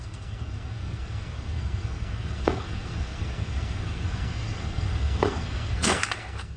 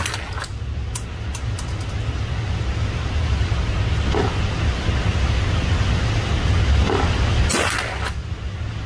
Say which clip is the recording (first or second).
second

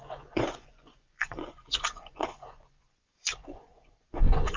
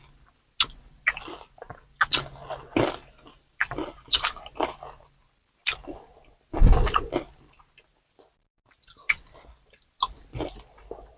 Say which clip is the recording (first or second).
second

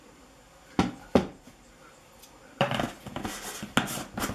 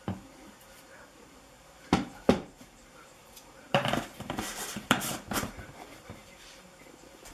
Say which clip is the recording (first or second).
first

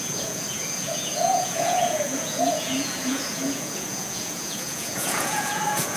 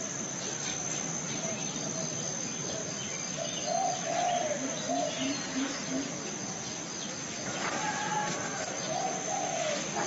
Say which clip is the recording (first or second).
second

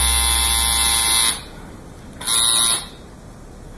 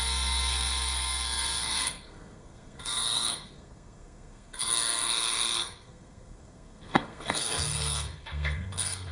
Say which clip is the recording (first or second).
first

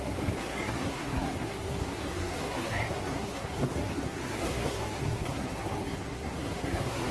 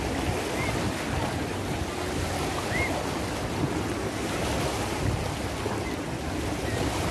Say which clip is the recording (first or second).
second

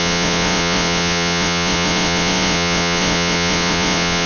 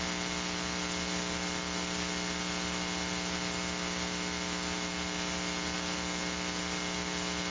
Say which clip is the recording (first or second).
second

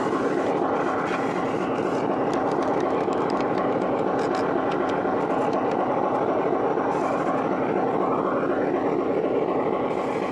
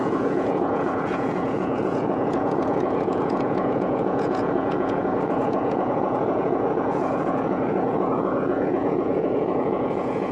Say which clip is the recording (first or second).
first